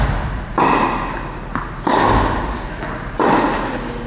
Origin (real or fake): real